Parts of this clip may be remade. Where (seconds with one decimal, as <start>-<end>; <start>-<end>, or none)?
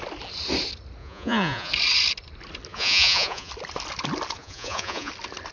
1.0-1.7; 2.7-3.5; 4.4-5.1